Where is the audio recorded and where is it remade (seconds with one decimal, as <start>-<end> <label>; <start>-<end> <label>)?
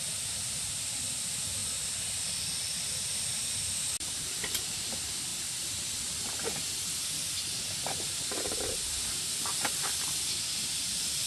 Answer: 0.0-1.6 remade; 1.6-2.2 recorded; 2.2-5.3 remade; 5.3-8.7 recorded; 8.7-11.3 remade